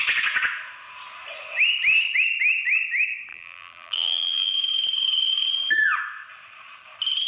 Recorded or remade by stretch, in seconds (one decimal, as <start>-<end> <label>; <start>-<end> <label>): 0.0-3.3 recorded; 3.3-4.5 remade; 4.5-7.3 recorded